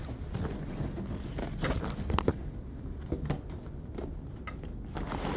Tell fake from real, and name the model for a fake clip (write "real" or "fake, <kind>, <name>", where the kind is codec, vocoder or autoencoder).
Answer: real